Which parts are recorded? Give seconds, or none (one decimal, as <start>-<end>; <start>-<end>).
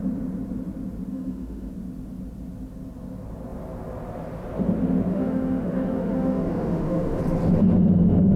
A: 0.0-1.1; 1.7-5.1; 7.2-8.4